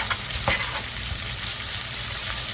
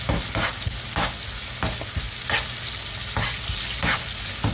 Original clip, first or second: second